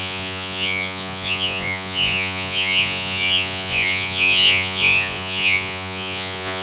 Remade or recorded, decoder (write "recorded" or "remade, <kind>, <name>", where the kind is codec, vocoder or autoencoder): remade, vocoder, Vocos